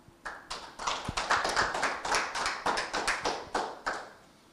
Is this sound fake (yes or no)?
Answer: no